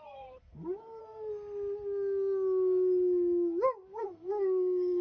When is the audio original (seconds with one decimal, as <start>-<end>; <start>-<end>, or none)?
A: 1.0-4.0